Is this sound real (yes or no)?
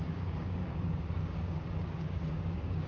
no